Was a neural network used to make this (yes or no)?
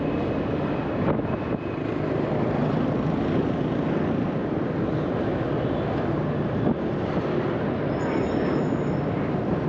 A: no